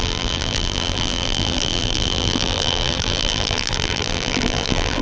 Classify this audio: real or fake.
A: fake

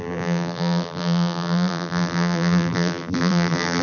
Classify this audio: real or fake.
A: fake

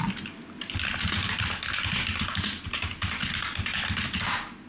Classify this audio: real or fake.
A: real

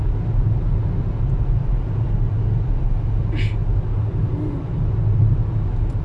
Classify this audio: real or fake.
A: real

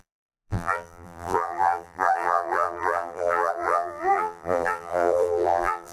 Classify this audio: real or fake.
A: fake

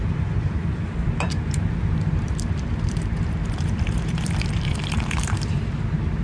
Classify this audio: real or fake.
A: fake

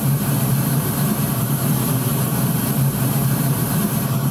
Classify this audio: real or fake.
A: fake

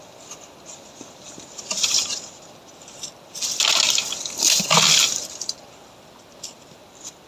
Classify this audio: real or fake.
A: fake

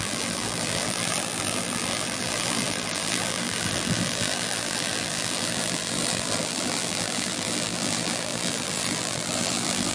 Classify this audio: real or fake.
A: fake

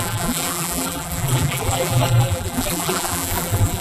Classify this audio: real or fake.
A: fake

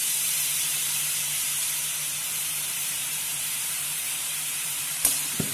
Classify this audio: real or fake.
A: fake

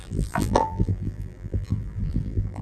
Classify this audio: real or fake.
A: fake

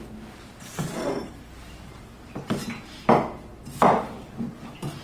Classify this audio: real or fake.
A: real